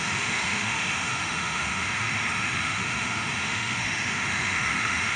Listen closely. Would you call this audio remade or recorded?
remade